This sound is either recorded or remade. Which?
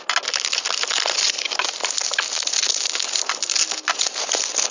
recorded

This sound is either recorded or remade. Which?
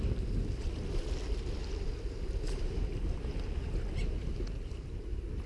recorded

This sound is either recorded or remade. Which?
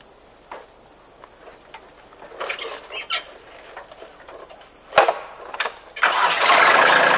recorded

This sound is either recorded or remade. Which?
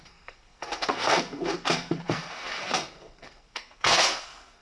remade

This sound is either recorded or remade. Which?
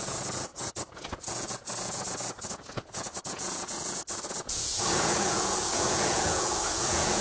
remade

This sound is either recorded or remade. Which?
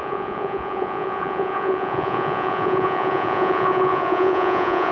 remade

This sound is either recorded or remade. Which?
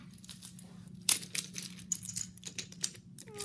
recorded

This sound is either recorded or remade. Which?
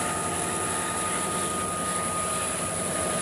recorded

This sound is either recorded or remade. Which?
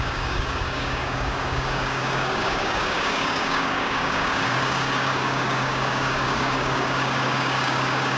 remade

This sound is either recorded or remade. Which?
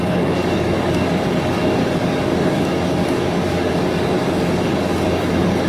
remade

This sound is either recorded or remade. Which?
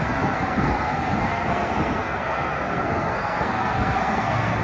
remade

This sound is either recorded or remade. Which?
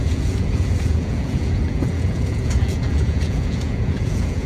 remade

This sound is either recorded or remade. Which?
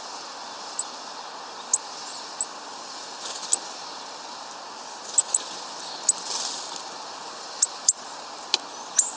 recorded